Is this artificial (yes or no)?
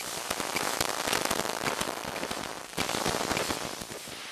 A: no